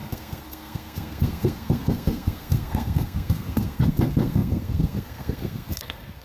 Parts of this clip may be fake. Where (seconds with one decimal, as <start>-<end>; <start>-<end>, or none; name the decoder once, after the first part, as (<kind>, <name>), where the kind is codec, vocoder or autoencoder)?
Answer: 0.0-6.2 (codec, SNAC)